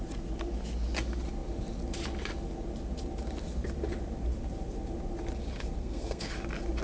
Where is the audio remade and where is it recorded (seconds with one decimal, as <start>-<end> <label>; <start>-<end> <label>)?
0.0-5.8 recorded; 5.8-6.3 remade; 6.3-6.8 recorded